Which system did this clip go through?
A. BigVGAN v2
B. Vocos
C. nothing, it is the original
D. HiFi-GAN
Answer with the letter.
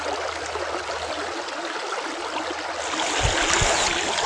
C